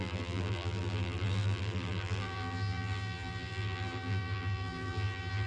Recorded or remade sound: remade